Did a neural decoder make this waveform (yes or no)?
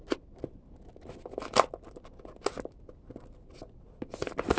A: no